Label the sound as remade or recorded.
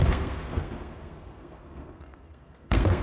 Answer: remade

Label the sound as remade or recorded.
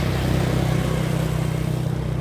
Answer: recorded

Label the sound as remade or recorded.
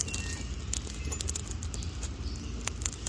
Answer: recorded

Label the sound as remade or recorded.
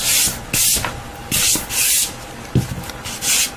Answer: recorded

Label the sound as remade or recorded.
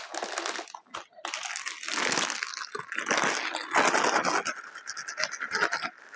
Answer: recorded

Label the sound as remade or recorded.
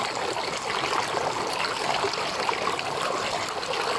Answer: recorded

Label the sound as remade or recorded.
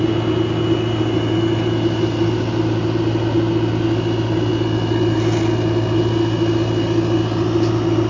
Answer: recorded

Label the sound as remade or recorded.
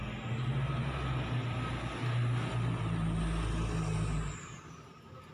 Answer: recorded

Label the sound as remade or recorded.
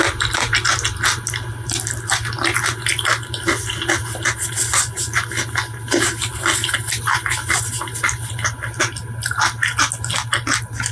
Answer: recorded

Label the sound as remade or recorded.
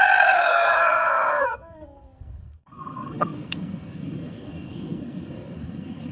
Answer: remade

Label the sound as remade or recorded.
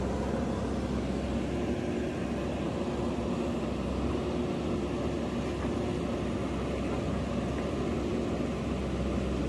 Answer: recorded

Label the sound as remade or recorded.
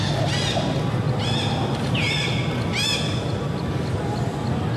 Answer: recorded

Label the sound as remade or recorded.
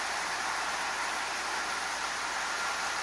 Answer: recorded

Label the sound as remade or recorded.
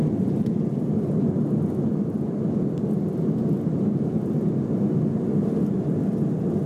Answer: recorded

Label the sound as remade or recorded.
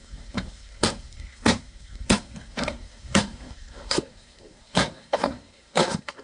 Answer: remade